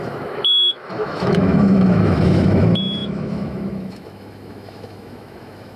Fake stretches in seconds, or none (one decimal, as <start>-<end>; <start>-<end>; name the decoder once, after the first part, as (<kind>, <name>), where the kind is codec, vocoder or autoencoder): 0.0-5.8 (autoencoder, DAC-VAE)